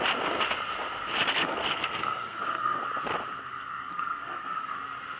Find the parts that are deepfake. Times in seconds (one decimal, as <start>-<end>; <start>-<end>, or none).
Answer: 1.3-2.8; 3.4-4.8

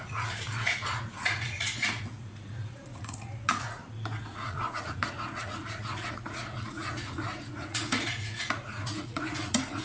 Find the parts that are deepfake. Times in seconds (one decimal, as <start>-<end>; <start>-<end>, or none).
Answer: 0.0-3.8; 4.3-9.8